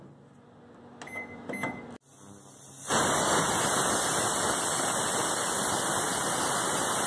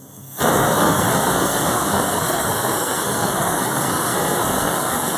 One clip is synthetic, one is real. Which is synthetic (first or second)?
second